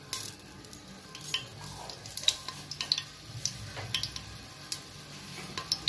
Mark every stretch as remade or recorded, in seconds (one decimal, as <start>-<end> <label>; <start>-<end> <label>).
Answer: 0.0-5.9 recorded